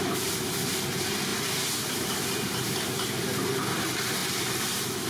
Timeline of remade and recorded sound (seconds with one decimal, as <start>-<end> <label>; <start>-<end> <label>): 0.0-1.3 recorded; 1.3-3.1 remade; 3.1-5.1 recorded